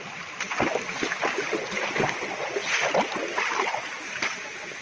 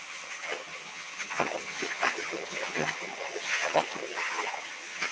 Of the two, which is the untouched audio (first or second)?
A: first